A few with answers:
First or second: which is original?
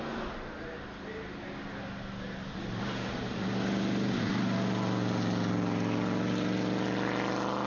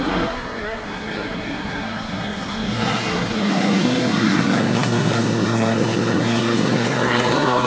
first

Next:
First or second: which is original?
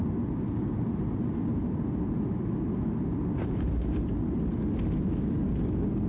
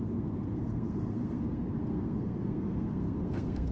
first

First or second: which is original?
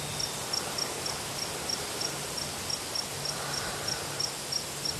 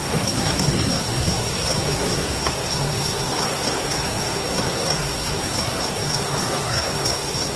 first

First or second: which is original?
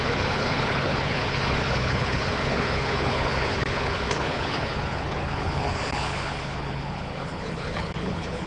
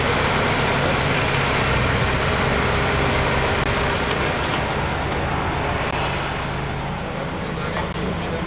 second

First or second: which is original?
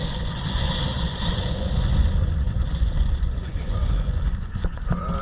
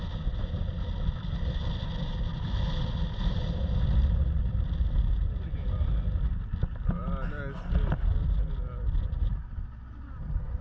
second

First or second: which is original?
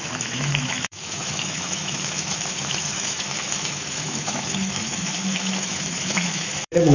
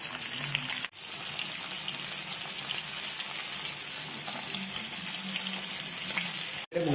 second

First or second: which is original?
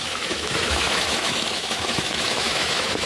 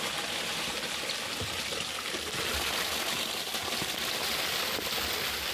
second